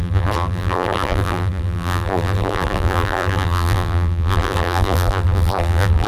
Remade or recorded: remade